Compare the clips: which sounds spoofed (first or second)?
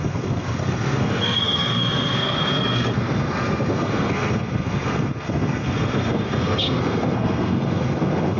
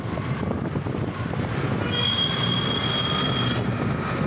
first